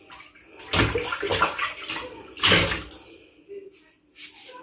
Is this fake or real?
real